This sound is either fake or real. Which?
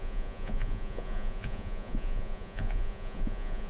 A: fake